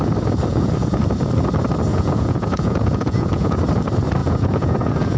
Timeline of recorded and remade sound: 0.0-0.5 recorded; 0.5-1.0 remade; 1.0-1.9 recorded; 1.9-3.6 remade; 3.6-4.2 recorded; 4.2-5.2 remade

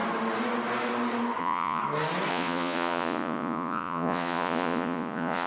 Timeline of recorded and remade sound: 0.0-1.4 recorded; 1.4-1.8 remade; 1.8-2.3 recorded; 2.3-5.5 remade